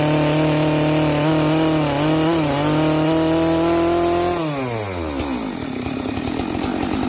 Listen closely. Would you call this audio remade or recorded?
recorded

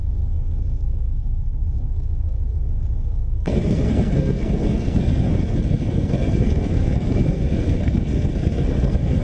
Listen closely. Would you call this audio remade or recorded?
remade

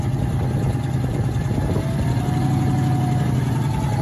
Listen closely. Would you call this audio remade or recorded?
recorded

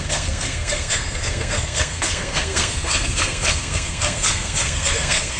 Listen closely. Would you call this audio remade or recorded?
remade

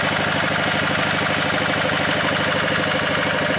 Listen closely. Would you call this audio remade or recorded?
recorded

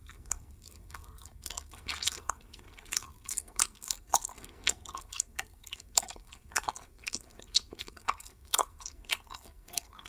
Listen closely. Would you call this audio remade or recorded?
remade